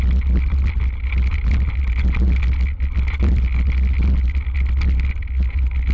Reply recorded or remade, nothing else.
recorded